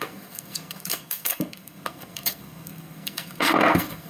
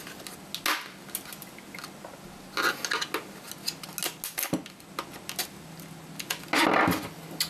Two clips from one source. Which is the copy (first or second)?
first